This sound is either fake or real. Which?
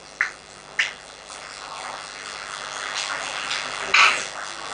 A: real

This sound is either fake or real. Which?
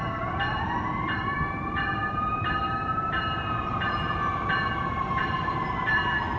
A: fake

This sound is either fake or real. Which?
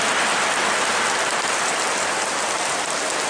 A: real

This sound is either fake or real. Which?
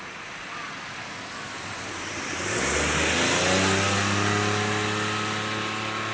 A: real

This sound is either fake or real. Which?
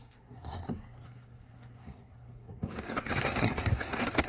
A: fake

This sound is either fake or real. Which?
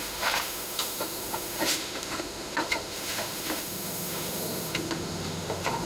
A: fake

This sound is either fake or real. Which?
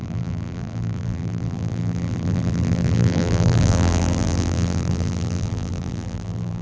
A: fake